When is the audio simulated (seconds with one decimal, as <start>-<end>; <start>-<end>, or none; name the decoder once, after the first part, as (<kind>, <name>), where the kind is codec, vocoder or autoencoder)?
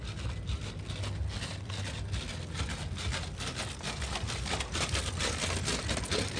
none